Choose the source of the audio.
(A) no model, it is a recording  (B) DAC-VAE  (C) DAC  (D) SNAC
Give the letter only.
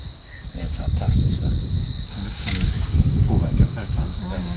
C